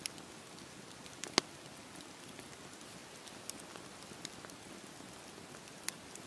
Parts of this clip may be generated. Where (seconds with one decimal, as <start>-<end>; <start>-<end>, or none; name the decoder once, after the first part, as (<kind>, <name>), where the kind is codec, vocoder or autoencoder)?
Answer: none